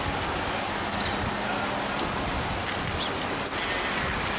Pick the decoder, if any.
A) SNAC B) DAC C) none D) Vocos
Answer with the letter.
C